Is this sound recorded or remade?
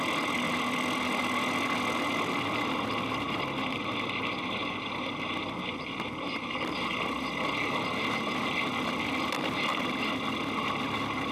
recorded